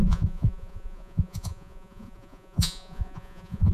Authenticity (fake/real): fake